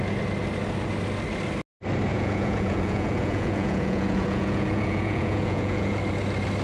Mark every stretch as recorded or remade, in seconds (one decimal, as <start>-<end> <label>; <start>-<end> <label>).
0.0-2.1 recorded; 2.1-6.0 remade; 6.0-6.6 recorded